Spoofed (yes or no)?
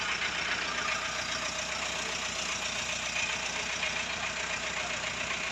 no